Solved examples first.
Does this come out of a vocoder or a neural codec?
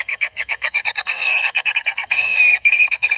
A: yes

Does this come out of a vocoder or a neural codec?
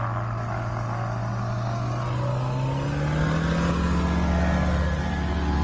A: no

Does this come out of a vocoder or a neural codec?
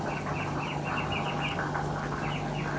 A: no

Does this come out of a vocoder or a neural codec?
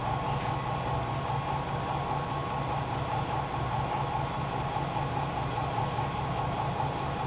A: no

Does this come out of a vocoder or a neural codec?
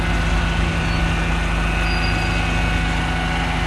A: no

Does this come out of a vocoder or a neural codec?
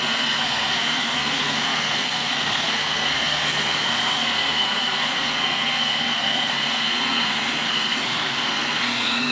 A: yes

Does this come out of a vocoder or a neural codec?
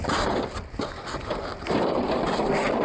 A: no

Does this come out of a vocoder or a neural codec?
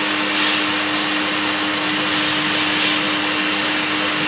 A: no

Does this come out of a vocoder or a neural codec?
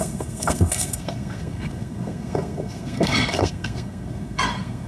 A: yes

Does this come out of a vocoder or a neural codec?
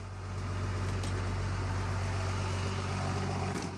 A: no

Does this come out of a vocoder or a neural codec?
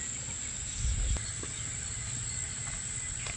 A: no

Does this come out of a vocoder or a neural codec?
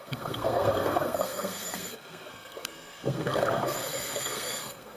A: yes